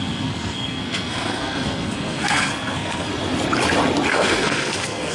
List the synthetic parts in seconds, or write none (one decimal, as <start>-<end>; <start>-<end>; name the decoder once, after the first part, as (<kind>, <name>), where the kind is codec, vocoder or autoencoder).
0.0-3.1 (codec, SNAC); 4.1-5.1